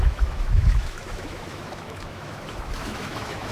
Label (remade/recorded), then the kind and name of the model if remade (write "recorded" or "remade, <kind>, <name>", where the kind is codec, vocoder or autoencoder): remade, autoencoder, DAC-VAE